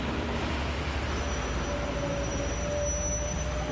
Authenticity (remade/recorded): recorded